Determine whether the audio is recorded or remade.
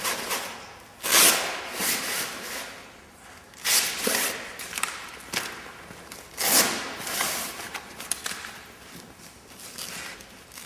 recorded